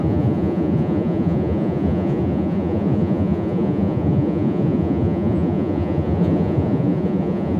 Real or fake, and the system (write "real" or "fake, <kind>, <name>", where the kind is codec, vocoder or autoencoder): fake, vocoder, Vocos